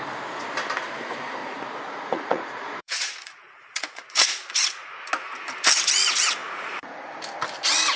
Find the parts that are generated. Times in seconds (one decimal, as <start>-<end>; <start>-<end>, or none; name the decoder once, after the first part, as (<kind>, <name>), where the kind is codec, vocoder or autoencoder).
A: 1.4-5.1 (vocoder, Vocos); 6.4-7.1